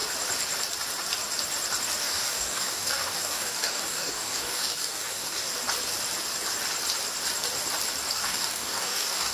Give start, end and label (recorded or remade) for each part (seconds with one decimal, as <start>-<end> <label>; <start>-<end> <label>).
0.0-2.0 recorded; 2.0-5.5 remade; 5.5-8.1 recorded; 8.1-9.3 remade

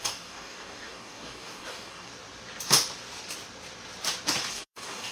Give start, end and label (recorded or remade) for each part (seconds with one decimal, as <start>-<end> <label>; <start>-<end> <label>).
0.0-2.1 remade; 2.1-4.5 recorded; 4.5-5.1 remade

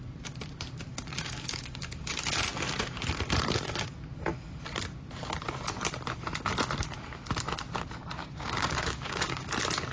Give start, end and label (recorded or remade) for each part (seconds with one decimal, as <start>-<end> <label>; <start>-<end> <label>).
0.0-0.9 recorded; 0.9-2.1 remade; 2.1-8.2 recorded; 8.2-9.5 remade; 9.5-9.9 recorded

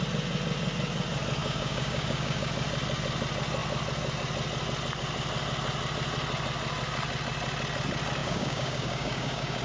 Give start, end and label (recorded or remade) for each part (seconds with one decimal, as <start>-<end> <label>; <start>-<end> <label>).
0.0-1.4 recorded; 1.4-2.5 remade; 2.5-8.2 recorded; 8.2-9.6 remade

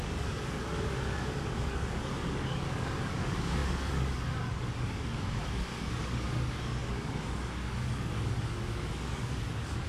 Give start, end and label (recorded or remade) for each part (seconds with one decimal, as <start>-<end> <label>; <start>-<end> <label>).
0.0-9.9 remade